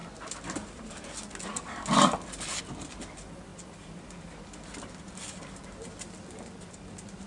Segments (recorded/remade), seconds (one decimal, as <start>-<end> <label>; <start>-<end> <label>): 0.0-7.3 recorded